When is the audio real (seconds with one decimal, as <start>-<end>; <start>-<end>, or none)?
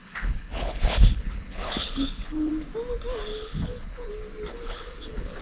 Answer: 2.5-3.3; 4.1-4.5